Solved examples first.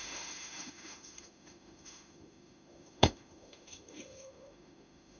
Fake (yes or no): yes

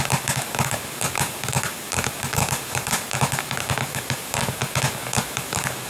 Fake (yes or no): yes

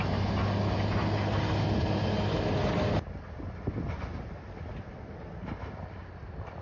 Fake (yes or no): no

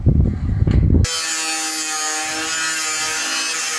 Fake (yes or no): no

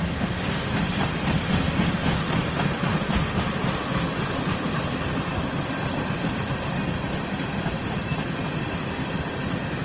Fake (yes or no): no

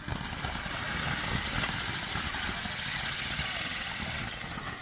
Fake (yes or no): no